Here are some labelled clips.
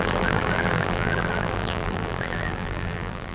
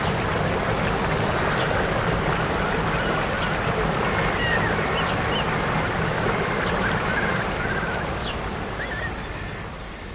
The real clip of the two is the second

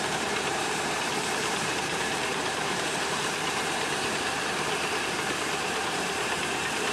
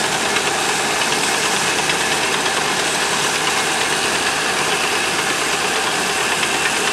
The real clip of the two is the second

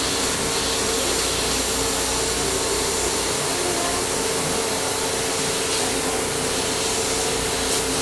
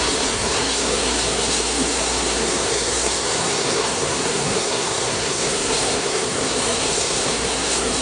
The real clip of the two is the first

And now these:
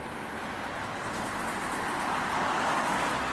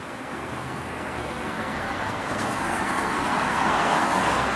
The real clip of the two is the first